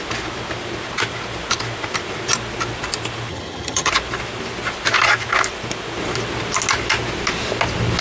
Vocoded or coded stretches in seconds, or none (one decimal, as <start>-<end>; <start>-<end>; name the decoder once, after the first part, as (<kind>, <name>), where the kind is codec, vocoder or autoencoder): 3.3-3.9 (vocoder, HiFi-GAN)